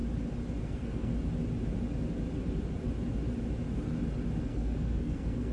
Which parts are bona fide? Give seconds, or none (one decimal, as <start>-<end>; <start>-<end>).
0.0-0.6; 1.1-4.4